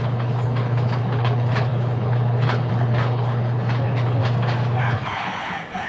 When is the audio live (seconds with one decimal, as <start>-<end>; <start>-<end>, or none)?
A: 4.2-4.8